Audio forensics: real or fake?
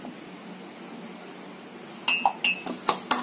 real